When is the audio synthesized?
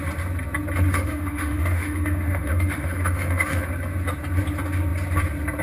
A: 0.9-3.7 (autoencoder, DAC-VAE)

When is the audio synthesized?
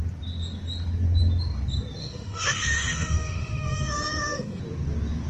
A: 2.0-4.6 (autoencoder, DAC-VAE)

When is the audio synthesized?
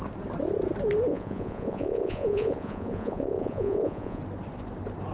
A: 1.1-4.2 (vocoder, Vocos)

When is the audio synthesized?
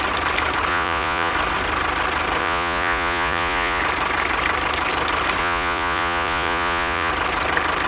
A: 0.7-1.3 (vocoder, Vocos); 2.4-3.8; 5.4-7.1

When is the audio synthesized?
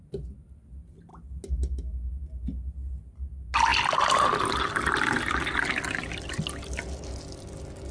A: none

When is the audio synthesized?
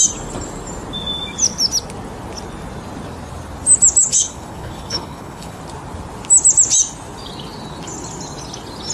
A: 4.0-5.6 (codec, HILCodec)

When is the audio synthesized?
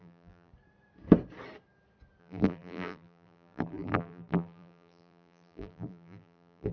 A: 0.0-0.5 (vocoder, BigVGAN v2); 2.2-6.7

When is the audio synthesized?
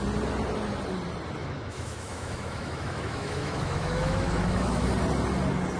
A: 1.4-4.9 (autoencoder, DAC-VAE)